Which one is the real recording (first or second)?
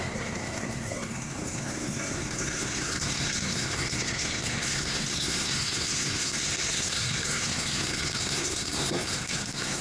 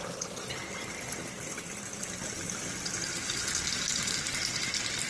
second